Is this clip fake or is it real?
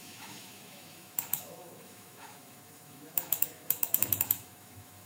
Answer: fake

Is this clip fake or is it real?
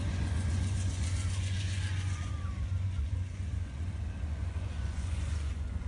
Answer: fake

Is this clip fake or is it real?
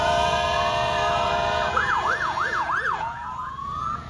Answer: fake